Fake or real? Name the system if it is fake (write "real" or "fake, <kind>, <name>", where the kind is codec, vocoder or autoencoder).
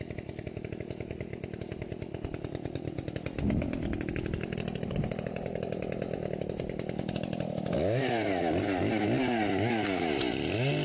real